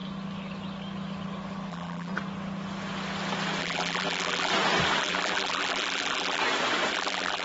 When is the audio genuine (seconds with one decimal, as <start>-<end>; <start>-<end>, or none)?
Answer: 0.0-1.7; 2.1-3.6; 4.5-5.0; 6.4-6.9